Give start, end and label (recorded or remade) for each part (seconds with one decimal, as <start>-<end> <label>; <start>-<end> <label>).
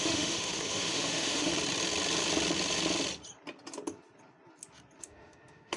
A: 0.0-1.5 remade; 1.5-5.0 recorded; 5.0-5.8 remade